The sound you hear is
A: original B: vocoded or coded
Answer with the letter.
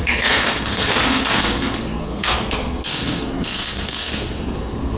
B